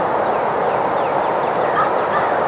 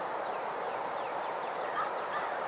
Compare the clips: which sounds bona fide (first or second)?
first